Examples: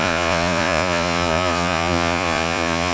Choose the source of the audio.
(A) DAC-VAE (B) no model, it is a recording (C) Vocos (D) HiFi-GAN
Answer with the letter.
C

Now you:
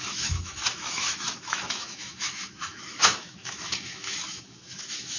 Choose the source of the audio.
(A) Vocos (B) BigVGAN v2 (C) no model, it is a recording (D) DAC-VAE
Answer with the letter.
D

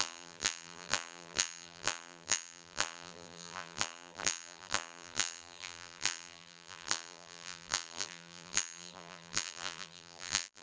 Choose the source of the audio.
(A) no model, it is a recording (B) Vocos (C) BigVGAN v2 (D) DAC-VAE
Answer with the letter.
C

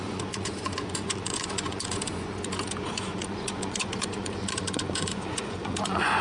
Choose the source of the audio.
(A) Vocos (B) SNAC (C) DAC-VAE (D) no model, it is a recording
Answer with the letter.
A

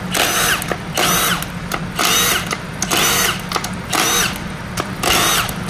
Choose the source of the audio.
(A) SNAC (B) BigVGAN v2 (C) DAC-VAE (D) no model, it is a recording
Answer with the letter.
D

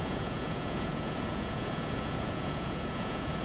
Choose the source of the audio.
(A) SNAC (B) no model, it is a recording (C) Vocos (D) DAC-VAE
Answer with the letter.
C